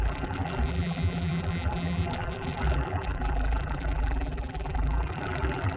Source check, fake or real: fake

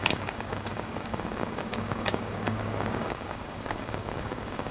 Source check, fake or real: fake